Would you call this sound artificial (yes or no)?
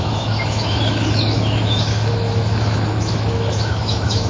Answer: yes